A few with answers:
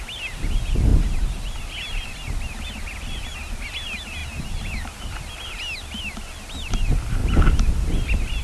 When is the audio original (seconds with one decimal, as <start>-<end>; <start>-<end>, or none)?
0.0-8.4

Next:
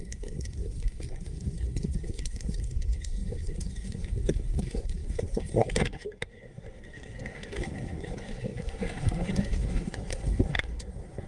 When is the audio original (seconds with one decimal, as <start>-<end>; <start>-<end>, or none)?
none

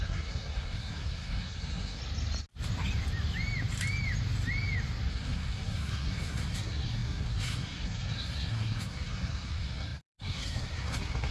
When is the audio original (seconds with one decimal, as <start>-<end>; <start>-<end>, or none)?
2.0-5.1

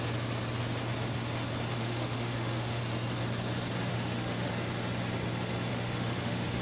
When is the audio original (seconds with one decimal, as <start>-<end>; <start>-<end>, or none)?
0.0-1.8; 2.8-3.9; 4.5-5.7

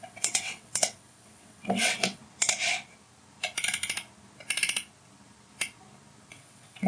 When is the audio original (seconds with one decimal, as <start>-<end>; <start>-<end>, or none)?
2.2-6.3